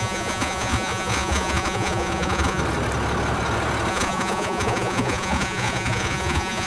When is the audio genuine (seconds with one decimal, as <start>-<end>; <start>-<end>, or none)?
2.6-3.9